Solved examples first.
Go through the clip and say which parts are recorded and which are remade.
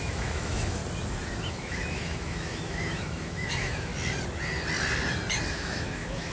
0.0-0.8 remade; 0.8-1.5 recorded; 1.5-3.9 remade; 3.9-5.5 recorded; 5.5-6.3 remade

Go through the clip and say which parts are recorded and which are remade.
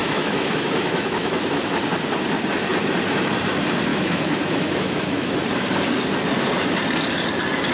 0.0-1.8 remade; 1.8-3.9 recorded; 3.9-5.4 remade; 5.4-7.7 recorded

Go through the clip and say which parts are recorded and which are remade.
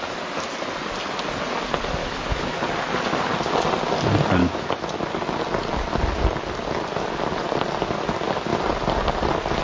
0.0-2.0 recorded; 2.0-2.6 remade; 2.6-4.4 recorded; 4.4-5.0 remade; 5.0-9.6 recorded